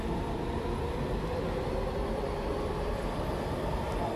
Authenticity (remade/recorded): remade